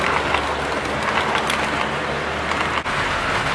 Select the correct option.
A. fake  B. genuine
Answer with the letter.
B